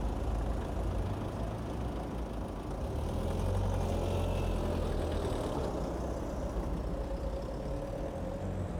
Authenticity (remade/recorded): recorded